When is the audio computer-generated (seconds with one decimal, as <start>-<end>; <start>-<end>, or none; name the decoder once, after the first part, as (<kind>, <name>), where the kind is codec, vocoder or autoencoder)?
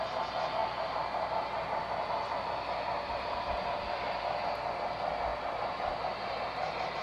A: none